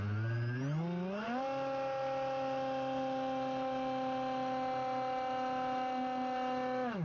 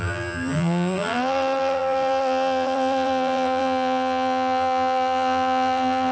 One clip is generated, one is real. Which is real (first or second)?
first